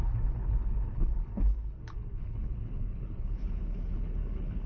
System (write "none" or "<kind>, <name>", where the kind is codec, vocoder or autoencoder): codec, HILCodec